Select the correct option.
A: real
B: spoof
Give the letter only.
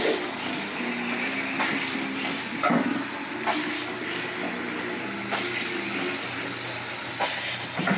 B